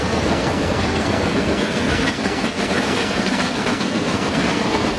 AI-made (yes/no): yes